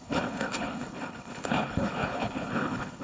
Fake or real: fake